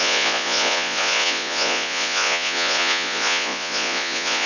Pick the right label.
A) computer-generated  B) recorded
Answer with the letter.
A